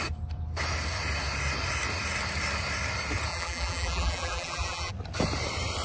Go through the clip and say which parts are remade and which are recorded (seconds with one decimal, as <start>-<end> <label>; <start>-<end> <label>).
0.0-3.3 recorded; 3.3-4.9 remade; 4.9-5.8 recorded